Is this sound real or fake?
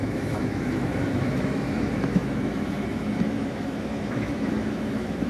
fake